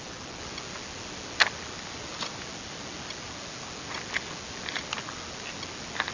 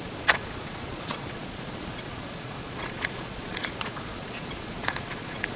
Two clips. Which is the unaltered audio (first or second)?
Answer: first